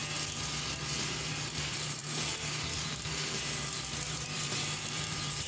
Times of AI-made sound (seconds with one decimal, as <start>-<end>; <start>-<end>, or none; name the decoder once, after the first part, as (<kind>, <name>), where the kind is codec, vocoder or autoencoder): 0.7-5.5 (vocoder, BigVGAN v2)